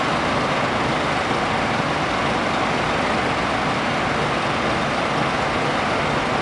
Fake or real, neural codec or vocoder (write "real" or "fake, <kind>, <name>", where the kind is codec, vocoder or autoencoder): real